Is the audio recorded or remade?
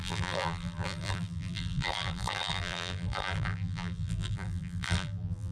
remade